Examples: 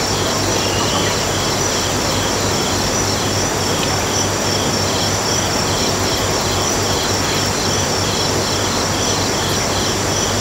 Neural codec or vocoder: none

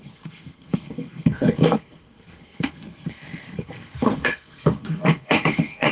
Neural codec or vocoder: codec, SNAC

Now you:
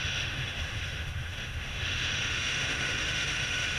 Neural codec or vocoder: autoencoder, DAC-VAE